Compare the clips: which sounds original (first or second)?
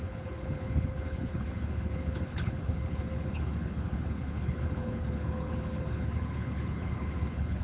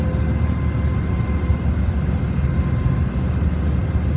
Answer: second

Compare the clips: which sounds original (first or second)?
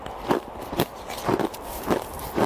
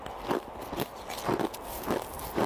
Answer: second